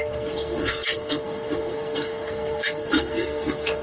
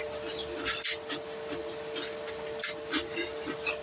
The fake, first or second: first